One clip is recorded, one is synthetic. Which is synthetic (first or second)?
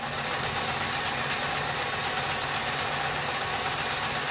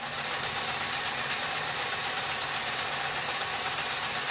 second